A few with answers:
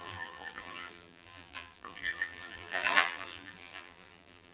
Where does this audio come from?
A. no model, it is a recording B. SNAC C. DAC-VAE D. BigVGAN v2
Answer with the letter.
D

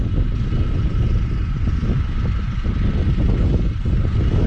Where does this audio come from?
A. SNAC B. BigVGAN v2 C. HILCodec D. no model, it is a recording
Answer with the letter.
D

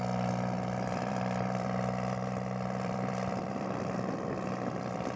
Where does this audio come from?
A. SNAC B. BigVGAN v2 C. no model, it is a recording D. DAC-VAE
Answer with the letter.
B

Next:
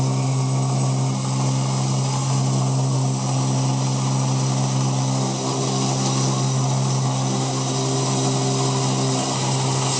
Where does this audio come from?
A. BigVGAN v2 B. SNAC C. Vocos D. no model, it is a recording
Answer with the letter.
D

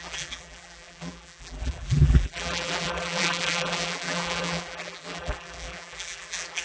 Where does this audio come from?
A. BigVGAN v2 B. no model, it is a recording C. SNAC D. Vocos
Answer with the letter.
A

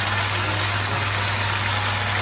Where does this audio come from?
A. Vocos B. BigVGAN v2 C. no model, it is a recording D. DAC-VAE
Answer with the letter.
C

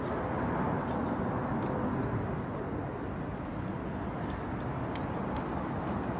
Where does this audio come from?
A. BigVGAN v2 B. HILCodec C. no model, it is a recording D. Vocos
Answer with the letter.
C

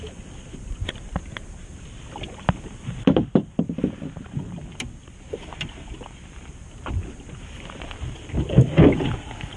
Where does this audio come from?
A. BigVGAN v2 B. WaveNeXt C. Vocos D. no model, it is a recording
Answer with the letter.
A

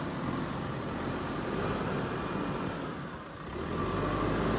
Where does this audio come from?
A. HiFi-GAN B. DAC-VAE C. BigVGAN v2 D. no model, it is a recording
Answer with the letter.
D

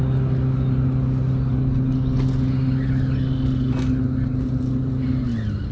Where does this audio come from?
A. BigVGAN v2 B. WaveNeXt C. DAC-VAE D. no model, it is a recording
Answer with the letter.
D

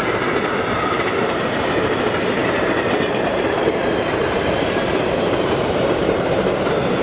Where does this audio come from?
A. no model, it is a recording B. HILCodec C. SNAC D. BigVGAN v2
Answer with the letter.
D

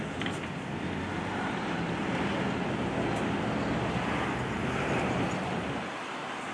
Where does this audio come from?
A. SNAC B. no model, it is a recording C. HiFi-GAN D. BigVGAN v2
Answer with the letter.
B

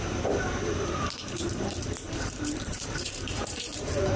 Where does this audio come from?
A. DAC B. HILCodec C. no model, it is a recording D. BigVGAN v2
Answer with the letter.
D